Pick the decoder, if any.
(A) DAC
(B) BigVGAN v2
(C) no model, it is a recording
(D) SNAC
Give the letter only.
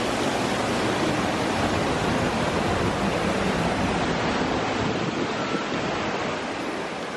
C